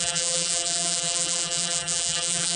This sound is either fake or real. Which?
fake